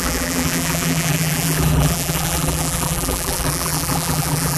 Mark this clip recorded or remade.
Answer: remade